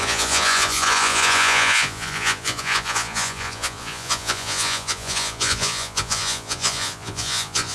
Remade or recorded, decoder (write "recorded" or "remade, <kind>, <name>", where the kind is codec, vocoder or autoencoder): remade, vocoder, Vocos